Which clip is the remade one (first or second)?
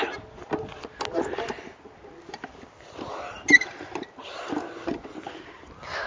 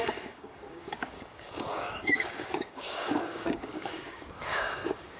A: second